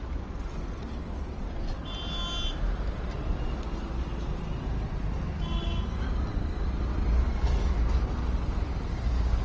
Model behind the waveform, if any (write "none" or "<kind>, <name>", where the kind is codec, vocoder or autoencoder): none